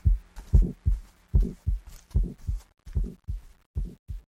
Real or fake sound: real